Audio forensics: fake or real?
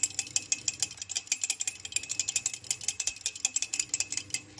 real